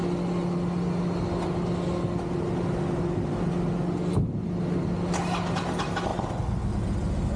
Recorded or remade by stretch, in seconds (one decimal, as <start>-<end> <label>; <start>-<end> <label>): 0.0-7.4 recorded